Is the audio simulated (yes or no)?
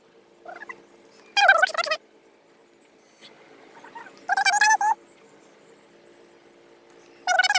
no